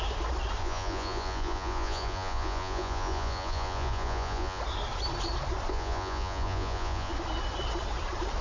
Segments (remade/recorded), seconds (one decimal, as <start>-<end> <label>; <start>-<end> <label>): 0.0-0.6 recorded; 0.6-4.6 remade; 4.6-5.7 recorded; 5.7-7.1 remade; 7.1-8.4 recorded